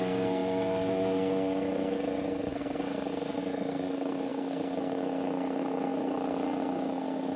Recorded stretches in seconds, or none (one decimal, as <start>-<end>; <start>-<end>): none